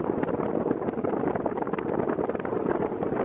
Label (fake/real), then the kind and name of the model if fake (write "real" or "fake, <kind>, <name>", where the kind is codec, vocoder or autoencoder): real